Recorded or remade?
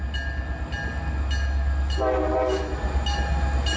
recorded